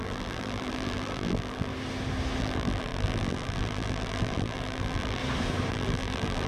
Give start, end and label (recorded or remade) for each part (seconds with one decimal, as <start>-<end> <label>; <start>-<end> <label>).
0.0-1.7 remade; 1.7-2.4 recorded; 2.4-5.2 remade; 5.2-5.7 recorded; 5.7-6.5 remade